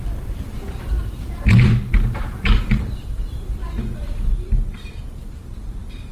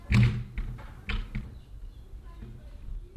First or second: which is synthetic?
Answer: first